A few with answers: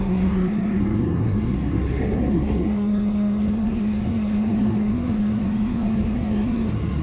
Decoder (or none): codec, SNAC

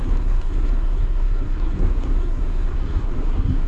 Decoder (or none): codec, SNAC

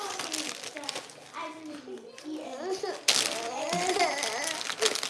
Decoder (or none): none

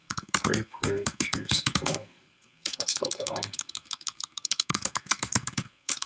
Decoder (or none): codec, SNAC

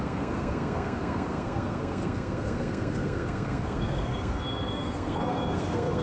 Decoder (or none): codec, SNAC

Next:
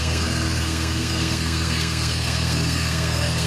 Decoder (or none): codec, SNAC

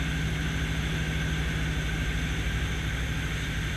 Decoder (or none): none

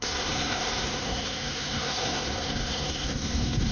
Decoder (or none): codec, SNAC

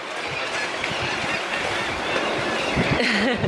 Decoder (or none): none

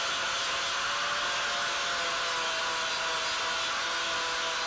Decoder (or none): none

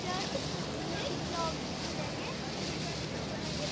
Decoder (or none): none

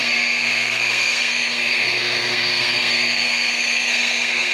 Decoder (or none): codec, SNAC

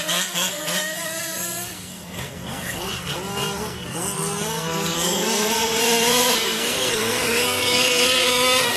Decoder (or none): codec, SNAC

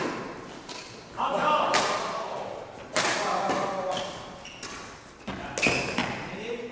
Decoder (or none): none